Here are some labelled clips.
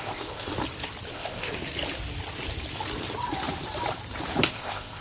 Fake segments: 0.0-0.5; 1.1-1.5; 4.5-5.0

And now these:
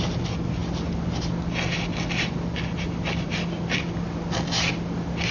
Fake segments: none